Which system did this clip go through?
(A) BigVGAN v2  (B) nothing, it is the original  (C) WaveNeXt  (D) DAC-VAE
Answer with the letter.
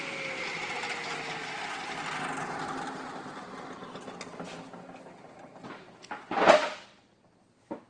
B